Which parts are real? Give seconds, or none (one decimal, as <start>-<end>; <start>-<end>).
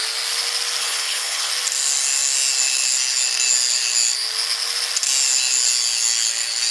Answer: 0.0-0.8; 1.5-6.7